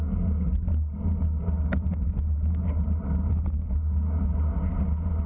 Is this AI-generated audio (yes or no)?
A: no